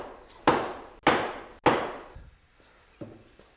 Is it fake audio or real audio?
real